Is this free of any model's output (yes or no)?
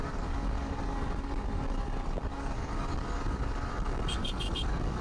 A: no